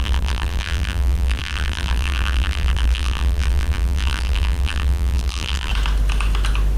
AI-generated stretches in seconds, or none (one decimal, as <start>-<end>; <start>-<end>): 0.0-5.7